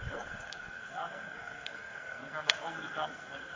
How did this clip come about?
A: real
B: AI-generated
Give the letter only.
B